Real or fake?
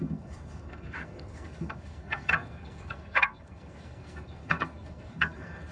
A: fake